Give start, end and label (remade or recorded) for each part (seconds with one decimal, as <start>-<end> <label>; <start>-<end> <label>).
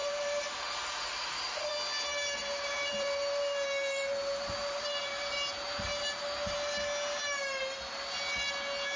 0.0-1.7 remade; 1.7-2.4 recorded; 2.4-5.3 remade; 5.3-9.0 recorded